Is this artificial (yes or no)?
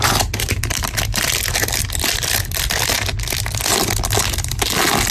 no